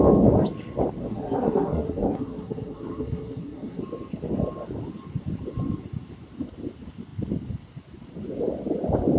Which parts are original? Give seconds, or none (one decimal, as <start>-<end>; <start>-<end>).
0.0-1.0; 3.8-9.2